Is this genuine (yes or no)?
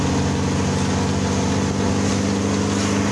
yes